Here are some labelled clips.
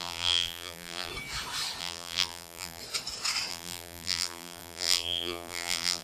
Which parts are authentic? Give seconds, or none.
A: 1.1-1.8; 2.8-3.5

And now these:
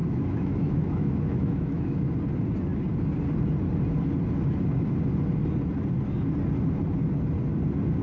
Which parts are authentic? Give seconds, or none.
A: 2.1-8.0

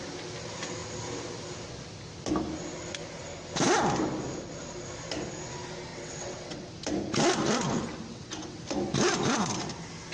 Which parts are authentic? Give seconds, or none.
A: 0.0-5.9; 6.7-8.1; 8.6-10.1

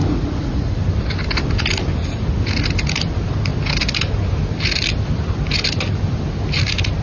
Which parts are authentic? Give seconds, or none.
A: 0.7-7.0

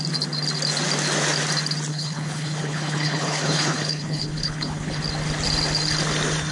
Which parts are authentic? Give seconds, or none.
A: 0.0-1.9; 5.0-6.5

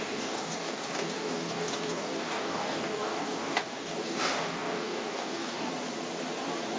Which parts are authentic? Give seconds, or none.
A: 5.7-6.8

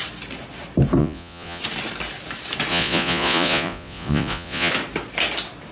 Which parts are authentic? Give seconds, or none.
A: 0.0-1.0; 1.6-2.7; 4.7-5.7

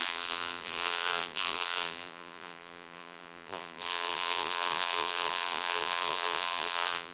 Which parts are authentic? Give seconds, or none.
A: none